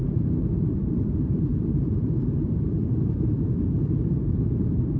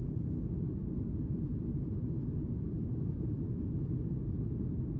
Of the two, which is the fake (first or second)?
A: first